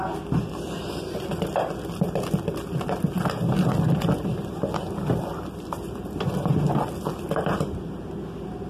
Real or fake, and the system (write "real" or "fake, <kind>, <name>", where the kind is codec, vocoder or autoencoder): real